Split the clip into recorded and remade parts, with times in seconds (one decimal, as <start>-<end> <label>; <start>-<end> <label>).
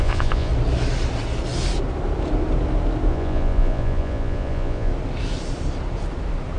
0.0-0.5 remade; 0.5-3.1 recorded; 3.1-4.9 remade; 4.9-6.6 recorded